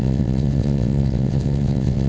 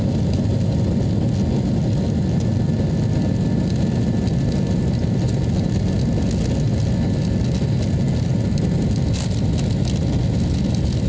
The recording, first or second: second